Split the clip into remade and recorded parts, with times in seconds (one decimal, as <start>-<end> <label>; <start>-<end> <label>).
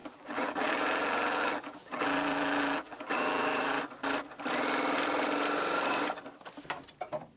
0.0-3.8 remade; 3.8-7.4 recorded